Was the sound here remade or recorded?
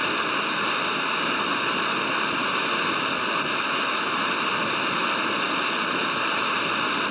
recorded